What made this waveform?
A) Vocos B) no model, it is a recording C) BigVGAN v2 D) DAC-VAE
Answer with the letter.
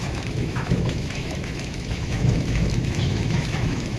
D